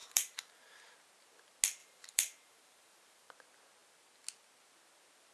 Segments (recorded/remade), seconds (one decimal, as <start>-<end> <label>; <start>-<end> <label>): 0.0-0.8 remade; 0.8-1.8 recorded; 1.8-3.3 remade; 3.3-5.3 recorded